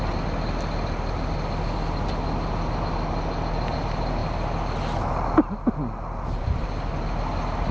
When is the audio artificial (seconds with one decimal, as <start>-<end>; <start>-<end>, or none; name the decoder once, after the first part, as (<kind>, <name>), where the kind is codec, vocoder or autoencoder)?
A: none